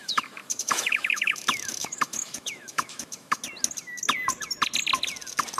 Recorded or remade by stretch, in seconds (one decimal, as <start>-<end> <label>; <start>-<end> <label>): 0.0-3.4 remade; 3.4-5.6 recorded